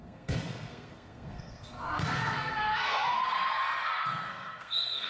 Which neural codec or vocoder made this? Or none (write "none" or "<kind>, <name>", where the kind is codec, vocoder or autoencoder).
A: codec, SNAC